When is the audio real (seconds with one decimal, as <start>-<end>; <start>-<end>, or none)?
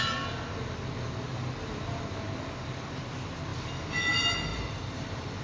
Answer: 0.0-4.5